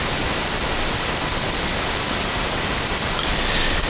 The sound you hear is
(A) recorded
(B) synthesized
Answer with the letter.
A